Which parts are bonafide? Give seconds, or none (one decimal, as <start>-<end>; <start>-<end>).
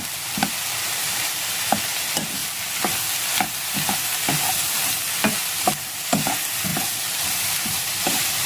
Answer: 2.4-5.4